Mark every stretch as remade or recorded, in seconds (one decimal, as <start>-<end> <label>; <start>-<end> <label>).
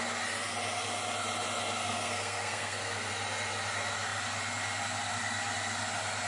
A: 0.0-1.8 recorded; 1.8-3.1 remade; 3.1-6.3 recorded